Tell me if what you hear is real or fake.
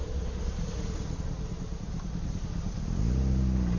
real